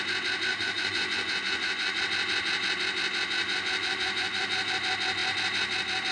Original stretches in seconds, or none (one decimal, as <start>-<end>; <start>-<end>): 0.0-0.5; 2.0-3.4; 4.7-6.1